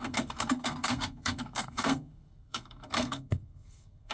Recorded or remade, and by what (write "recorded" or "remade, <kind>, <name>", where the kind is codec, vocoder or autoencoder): remade, codec, SNAC